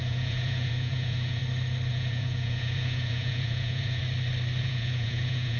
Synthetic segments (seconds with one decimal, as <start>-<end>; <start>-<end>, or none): 0.0-1.4; 1.9-4.0; 4.6-5.6